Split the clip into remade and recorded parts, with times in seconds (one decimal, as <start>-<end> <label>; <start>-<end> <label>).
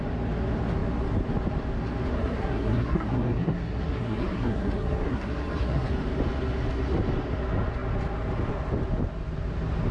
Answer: 0.0-2.1 recorded; 2.1-5.9 remade; 5.9-9.9 recorded